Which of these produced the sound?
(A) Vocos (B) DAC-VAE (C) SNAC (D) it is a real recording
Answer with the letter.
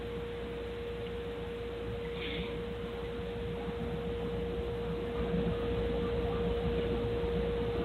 D